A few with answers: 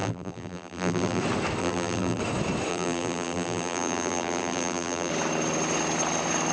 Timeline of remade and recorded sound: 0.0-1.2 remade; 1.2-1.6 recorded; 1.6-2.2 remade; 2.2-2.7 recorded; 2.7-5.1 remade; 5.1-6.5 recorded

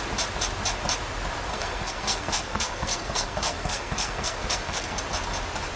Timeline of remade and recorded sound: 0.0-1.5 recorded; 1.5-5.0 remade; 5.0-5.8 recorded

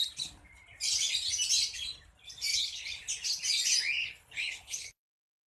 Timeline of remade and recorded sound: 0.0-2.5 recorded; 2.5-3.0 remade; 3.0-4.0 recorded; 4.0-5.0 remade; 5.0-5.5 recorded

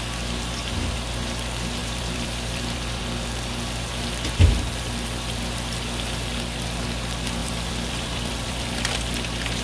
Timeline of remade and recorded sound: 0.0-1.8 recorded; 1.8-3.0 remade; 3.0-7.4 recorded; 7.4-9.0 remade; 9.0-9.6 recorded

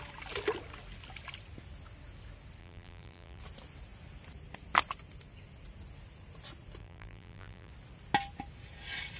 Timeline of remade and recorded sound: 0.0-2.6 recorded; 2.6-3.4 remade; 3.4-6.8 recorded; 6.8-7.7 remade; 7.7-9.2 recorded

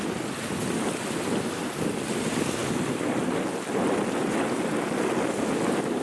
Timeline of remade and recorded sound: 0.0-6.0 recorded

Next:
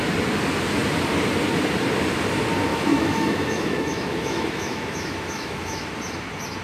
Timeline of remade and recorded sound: 0.0-2.7 recorded; 2.7-5.9 remade; 5.9-6.6 recorded

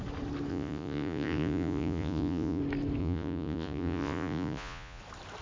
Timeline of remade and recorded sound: 0.0-0.5 recorded; 0.5-2.6 remade; 2.6-3.0 recorded; 3.0-5.0 remade; 5.0-5.4 recorded